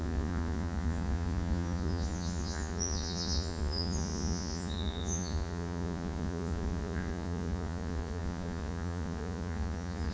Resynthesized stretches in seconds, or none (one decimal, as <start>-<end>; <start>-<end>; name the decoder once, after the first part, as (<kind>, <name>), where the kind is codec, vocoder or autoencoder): 0.0-10.1 (vocoder, Vocos)